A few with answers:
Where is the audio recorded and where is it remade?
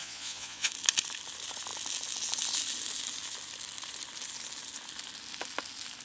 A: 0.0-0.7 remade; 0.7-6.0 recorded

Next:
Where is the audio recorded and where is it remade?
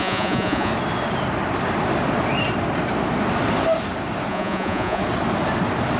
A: 0.0-0.7 remade; 0.7-4.3 recorded; 4.3-5.0 remade; 5.0-6.0 recorded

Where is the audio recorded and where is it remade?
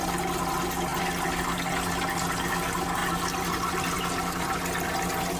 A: 0.0-5.4 recorded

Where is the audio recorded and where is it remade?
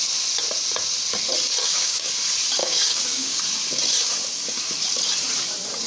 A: 0.0-1.6 recorded; 1.6-2.1 remade; 2.1-2.6 recorded; 2.6-3.4 remade; 3.4-5.9 recorded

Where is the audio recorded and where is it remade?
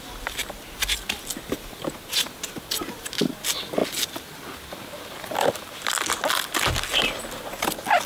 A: 0.0-8.1 recorded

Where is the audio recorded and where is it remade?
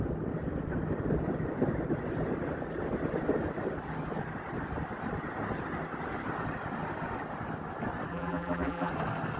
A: 0.0-8.1 recorded; 8.1-8.9 remade; 8.9-9.4 recorded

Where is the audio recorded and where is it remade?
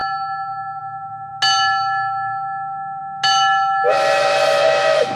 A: 0.0-5.2 recorded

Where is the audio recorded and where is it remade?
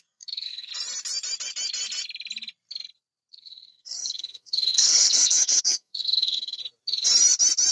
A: 0.0-0.7 remade; 0.7-3.3 recorded; 3.3-6.6 remade; 6.6-7.7 recorded